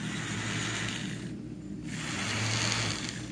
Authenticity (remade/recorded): recorded